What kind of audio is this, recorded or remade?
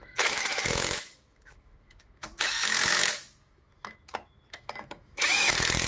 remade